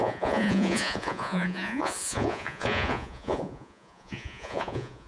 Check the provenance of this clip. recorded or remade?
remade